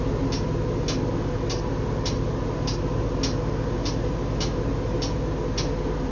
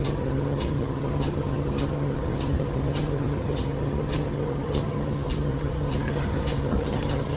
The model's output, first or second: second